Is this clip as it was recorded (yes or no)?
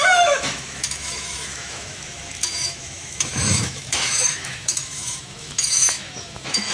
no